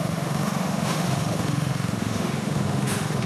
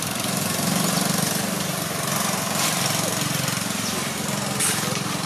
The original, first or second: second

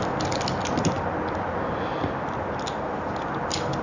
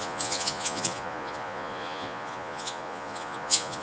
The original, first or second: first